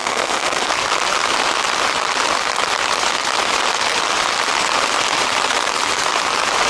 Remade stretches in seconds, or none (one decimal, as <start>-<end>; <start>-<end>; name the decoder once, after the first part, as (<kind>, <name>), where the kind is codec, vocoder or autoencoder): 0.0-0.7 (codec, SNAC)